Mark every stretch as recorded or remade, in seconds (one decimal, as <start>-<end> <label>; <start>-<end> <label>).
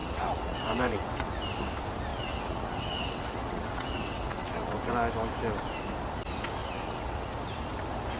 0.0-1.4 remade; 1.4-2.1 recorded; 2.1-4.9 remade; 4.9-6.6 recorded; 6.6-7.3 remade; 7.3-8.2 recorded